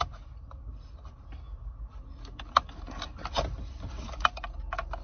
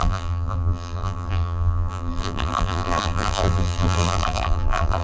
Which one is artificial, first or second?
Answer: second